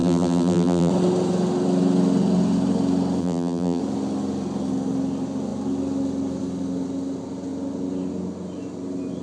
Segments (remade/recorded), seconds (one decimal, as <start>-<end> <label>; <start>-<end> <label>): 0.0-0.9 remade; 0.9-3.2 recorded; 3.2-3.8 remade; 3.8-9.2 recorded